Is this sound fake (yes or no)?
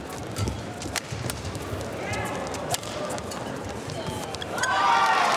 no